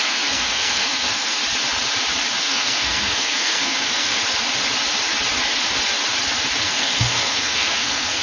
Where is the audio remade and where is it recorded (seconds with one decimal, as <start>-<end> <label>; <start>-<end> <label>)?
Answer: 0.0-1.4 remade; 1.4-2.4 recorded; 2.4-4.2 remade; 4.2-6.6 recorded; 6.6-8.2 remade